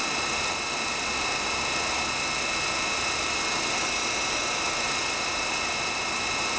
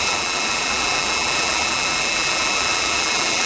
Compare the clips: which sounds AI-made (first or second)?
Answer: second